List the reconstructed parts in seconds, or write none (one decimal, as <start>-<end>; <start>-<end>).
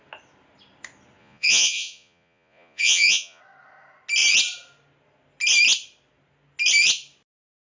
1.2-3.4